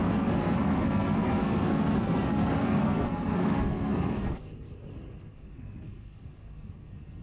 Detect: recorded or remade remade